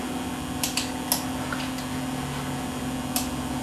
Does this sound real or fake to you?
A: real